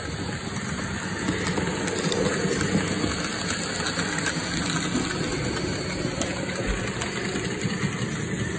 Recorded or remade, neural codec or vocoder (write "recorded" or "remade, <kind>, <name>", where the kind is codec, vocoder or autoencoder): recorded